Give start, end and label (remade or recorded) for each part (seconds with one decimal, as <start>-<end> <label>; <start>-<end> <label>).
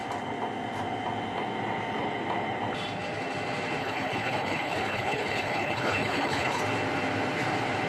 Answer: 0.0-3.8 recorded; 3.8-6.6 remade; 6.6-7.9 recorded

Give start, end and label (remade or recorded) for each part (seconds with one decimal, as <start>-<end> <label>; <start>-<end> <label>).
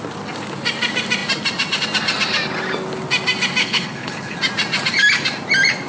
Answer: 0.0-3.6 recorded; 3.6-4.4 remade; 4.4-5.9 recorded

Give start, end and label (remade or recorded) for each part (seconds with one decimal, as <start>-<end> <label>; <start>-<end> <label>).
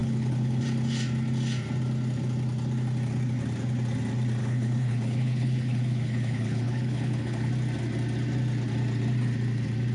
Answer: 0.0-0.6 remade; 0.6-4.4 recorded; 4.4-7.5 remade; 7.5-9.9 recorded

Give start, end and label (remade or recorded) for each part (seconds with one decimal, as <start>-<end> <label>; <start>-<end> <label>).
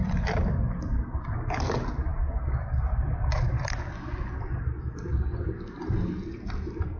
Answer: 0.0-7.0 recorded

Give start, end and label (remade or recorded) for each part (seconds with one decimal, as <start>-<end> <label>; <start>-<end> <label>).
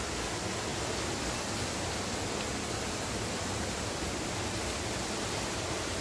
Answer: 0.0-6.0 recorded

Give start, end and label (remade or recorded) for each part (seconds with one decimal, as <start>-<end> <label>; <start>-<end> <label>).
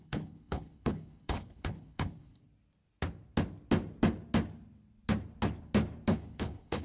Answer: 0.0-2.4 remade; 2.4-6.1 recorded; 6.1-6.8 remade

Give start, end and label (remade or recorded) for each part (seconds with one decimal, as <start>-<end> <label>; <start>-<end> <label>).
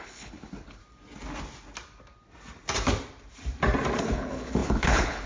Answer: 0.0-0.8 remade; 0.8-4.0 recorded; 4.0-5.3 remade